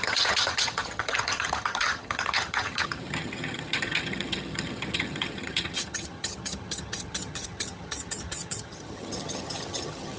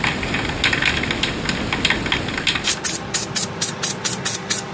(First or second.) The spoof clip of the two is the first